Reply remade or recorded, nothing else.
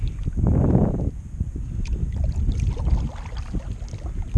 recorded